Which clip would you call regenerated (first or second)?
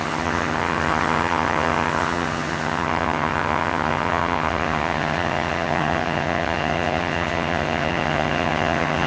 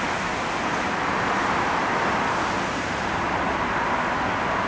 first